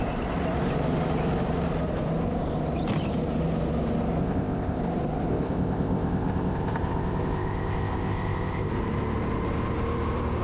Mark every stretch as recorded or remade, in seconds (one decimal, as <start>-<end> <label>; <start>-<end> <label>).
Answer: 0.0-4.2 recorded; 4.2-4.8 remade; 4.8-5.3 recorded; 5.3-8.7 remade; 8.7-10.4 recorded